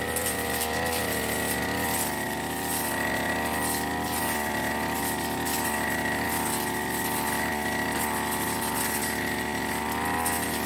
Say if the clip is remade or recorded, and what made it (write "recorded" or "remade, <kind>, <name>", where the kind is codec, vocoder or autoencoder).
recorded